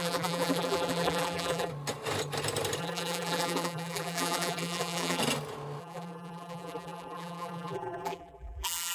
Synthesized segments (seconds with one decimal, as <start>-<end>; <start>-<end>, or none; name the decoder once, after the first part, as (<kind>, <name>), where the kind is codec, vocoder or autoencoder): 0.0-1.7 (vocoder, BigVGAN v2); 2.8-5.2; 5.8-8.9